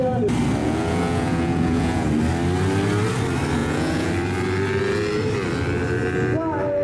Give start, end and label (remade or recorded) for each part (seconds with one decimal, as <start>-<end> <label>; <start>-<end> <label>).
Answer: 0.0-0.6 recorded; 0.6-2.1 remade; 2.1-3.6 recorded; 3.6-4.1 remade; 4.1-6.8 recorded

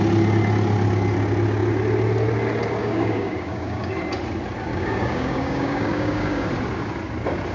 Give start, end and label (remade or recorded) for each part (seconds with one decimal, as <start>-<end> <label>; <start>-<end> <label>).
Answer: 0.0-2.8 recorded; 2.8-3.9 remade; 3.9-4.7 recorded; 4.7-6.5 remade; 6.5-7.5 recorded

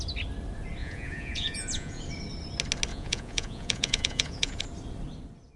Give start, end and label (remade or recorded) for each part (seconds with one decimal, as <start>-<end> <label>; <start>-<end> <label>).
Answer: 0.0-0.8 recorded; 0.8-2.0 remade; 2.0-2.9 recorded; 2.9-4.6 remade; 4.6-5.6 recorded

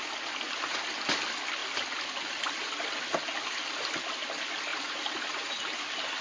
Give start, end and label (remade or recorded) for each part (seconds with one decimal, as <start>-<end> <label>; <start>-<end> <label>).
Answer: 0.0-6.2 recorded

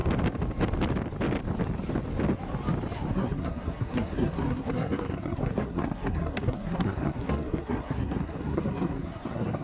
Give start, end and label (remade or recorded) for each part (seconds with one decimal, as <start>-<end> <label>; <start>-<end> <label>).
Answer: 0.0-3.1 recorded; 3.1-9.6 remade

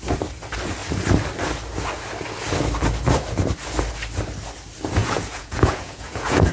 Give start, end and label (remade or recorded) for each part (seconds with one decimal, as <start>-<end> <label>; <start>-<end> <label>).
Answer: 0.0-5.0 recorded; 5.0-6.5 remade

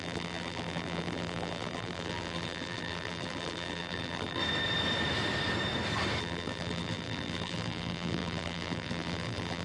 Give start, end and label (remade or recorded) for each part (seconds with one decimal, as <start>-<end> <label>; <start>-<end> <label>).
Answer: 0.0-4.4 remade; 4.4-6.2 recorded; 6.2-9.6 remade